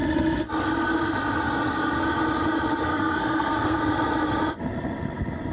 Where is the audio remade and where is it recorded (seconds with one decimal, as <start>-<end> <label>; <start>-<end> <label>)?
0.0-2.9 recorded; 2.9-3.8 remade; 3.8-5.5 recorded